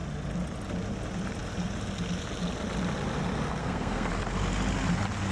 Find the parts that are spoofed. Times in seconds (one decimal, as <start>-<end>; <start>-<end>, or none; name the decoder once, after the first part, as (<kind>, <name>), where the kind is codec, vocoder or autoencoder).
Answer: 3.6-4.1 (codec, SNAC)